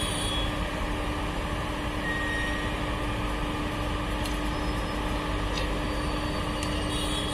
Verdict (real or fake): real